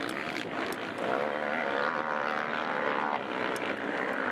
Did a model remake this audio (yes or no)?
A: no